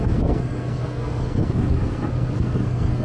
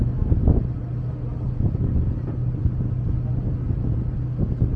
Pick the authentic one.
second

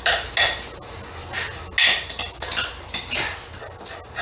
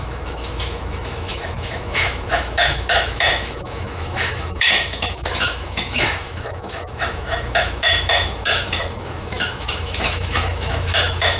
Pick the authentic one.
first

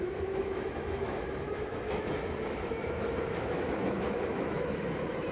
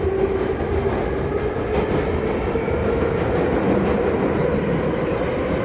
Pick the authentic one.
second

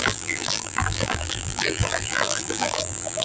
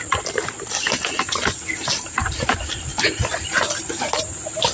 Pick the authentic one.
second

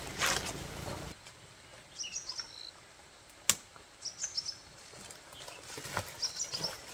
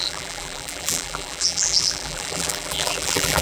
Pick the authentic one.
first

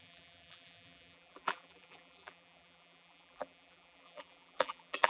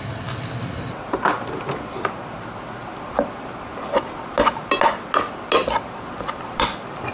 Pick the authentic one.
second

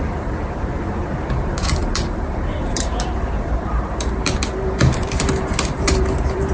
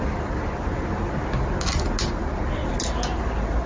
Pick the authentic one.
second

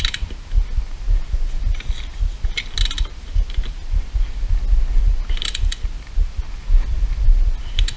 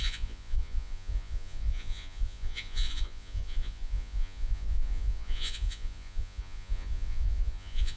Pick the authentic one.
first